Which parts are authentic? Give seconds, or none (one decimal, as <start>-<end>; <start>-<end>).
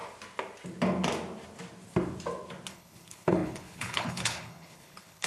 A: 0.0-2.7